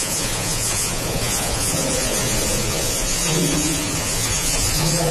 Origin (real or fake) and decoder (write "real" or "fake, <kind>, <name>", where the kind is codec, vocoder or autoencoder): fake, vocoder, Vocos